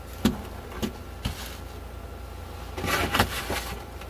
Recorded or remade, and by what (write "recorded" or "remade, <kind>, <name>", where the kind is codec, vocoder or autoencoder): recorded